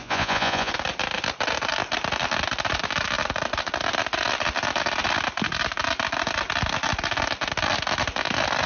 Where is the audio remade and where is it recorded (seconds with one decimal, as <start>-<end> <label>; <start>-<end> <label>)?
0.0-0.7 remade; 0.7-8.7 recorded